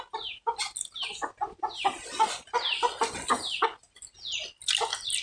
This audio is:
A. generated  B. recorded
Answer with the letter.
B